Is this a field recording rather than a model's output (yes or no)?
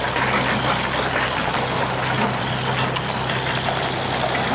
yes